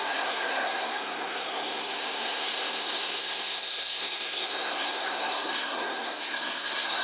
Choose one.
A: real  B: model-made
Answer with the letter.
B